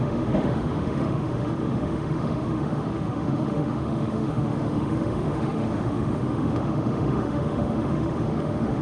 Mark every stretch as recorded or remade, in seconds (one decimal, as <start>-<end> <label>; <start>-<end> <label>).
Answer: 0.0-8.8 remade